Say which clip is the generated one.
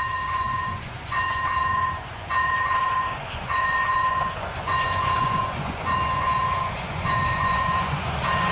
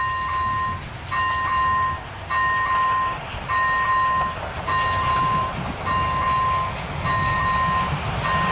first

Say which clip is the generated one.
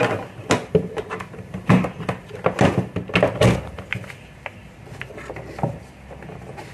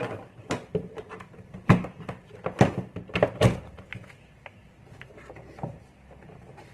second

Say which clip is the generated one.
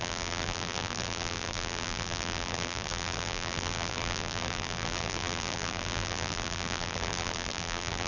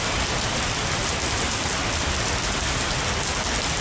first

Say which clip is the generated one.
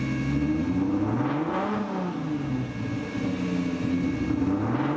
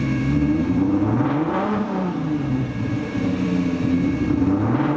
second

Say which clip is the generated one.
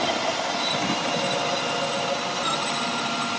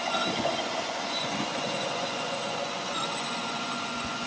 second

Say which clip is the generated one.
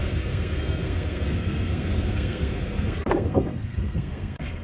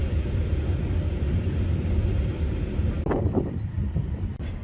first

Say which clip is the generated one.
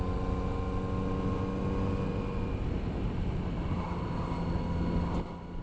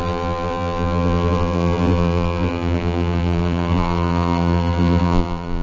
second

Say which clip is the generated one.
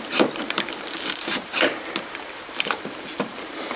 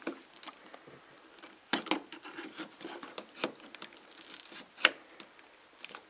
first